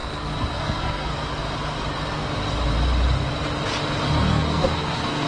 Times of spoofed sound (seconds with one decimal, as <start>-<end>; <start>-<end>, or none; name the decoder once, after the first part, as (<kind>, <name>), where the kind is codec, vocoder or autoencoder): 0.0-1.1 (codec, SNAC); 4.3-5.3